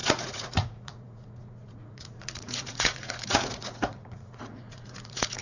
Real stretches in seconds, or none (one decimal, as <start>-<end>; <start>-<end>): none